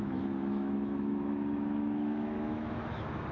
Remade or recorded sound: remade